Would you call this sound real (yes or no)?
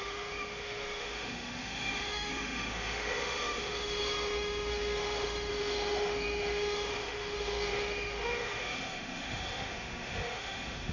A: no